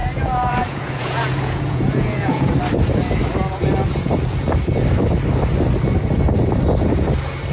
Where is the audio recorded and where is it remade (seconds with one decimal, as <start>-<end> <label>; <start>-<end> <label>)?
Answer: 0.0-2.5 remade; 2.5-7.5 recorded